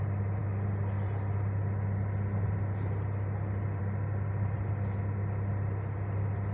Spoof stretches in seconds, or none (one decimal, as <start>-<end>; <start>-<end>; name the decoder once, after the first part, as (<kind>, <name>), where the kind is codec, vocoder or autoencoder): none